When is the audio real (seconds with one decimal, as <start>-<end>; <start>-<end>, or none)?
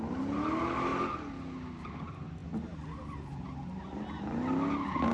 0.0-5.1